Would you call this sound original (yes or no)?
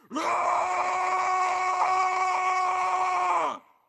no